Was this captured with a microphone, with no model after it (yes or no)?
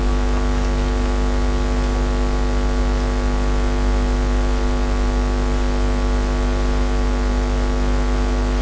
yes